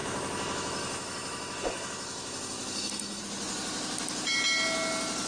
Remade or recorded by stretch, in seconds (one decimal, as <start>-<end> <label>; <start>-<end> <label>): 0.0-3.2 remade; 3.2-5.3 recorded